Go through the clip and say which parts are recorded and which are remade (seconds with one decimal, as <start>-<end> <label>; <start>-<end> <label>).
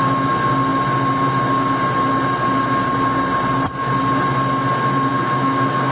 0.0-5.1 recorded; 5.1-5.9 remade